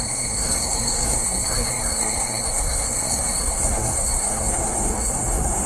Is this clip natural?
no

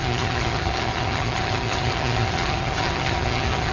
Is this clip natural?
no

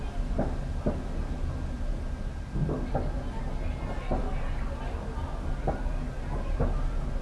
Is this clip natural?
yes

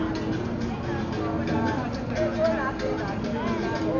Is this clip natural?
yes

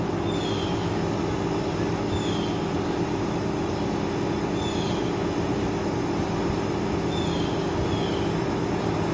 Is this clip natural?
yes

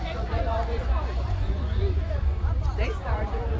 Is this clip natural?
no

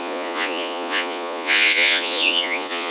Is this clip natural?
no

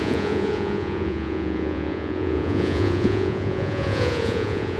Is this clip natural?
no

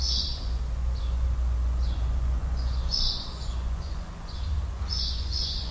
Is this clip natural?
no